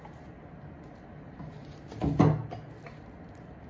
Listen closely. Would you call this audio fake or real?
real